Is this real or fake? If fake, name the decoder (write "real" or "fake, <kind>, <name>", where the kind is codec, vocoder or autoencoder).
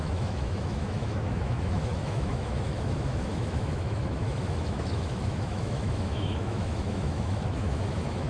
fake, autoencoder, DAC-VAE